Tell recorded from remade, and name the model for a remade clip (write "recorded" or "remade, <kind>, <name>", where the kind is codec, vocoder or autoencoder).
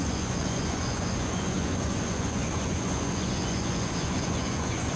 remade, vocoder, Vocos